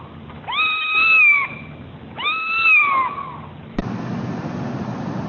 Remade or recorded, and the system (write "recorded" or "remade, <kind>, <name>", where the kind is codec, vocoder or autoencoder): recorded